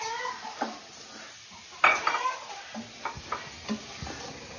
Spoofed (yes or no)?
no